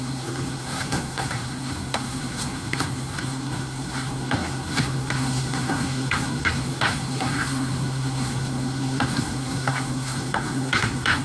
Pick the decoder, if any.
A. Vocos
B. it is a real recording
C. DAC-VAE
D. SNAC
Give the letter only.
D